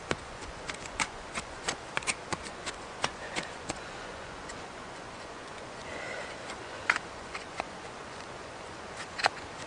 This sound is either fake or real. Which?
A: fake